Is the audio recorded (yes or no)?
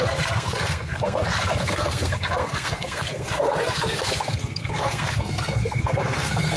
no